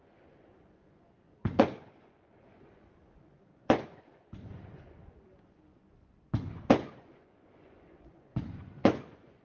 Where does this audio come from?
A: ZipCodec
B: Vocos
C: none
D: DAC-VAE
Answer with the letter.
B